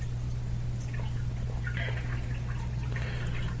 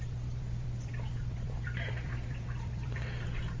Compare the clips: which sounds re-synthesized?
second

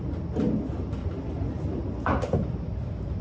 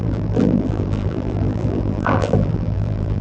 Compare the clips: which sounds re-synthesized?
second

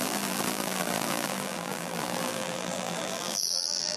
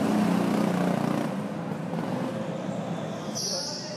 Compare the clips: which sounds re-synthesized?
first